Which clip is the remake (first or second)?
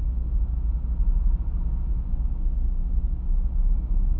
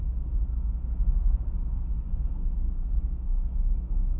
second